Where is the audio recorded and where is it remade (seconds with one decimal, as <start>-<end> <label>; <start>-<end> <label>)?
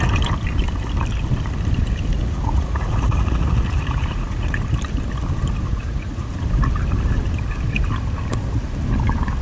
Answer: 0.0-2.2 recorded; 2.2-4.6 remade; 4.6-5.7 recorded; 5.7-6.3 remade; 6.3-9.4 recorded